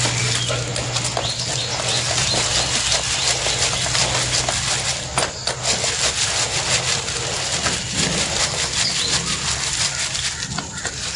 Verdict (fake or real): real